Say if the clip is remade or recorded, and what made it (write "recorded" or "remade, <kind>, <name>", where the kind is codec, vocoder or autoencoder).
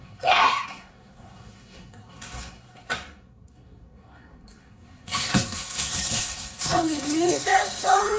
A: remade, codec, SNAC